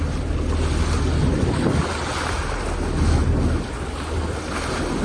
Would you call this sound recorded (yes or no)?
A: yes